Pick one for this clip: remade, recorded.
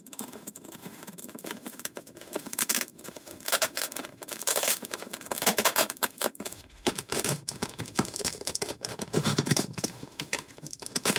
remade